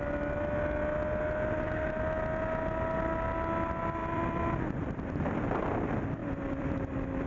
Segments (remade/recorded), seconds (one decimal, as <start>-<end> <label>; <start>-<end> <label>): 0.0-4.0 recorded; 4.0-5.3 remade; 5.3-6.2 recorded; 6.2-7.3 remade